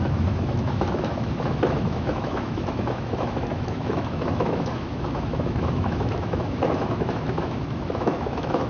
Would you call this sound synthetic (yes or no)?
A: yes